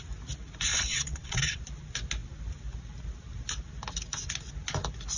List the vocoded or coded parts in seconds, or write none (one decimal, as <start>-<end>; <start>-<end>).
0.7-1.6